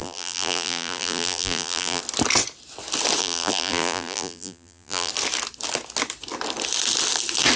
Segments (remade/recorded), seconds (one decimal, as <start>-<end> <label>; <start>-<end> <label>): 0.0-2.0 remade; 2.0-3.2 recorded; 3.2-5.1 remade; 5.1-7.6 recorded